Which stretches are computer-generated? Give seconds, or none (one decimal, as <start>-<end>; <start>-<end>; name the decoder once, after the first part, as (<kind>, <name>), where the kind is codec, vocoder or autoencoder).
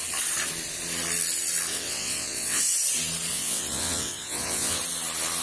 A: 1.7-2.6 (vocoder, WaveNeXt); 3.3-4.8